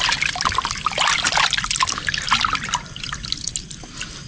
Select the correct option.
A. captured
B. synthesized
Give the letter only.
A